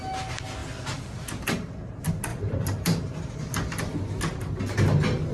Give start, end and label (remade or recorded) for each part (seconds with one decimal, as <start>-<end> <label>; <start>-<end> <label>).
0.0-2.3 recorded; 2.3-3.0 remade; 3.0-5.3 recorded